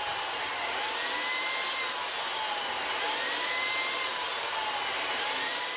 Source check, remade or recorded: recorded